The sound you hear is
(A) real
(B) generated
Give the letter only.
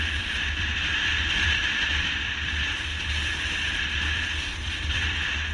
B